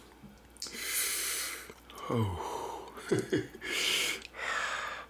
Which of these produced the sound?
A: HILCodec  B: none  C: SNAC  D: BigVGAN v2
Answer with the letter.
B